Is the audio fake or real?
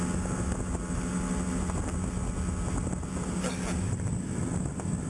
real